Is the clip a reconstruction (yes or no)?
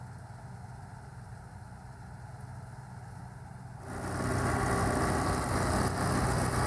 no